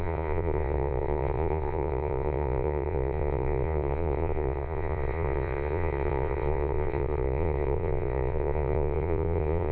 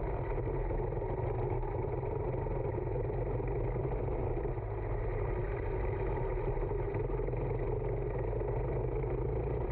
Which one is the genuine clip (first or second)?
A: second